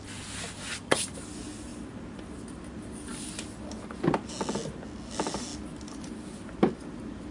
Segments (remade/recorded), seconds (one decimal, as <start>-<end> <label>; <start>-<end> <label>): 0.0-1.7 recorded; 1.7-2.4 remade; 2.4-7.3 recorded